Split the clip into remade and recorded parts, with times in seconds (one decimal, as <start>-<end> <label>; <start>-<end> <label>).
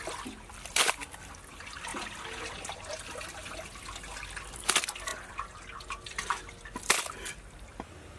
0.0-8.2 recorded